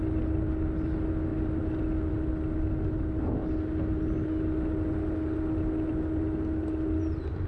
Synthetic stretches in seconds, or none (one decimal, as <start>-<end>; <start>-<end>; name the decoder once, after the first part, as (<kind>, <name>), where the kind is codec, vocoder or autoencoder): none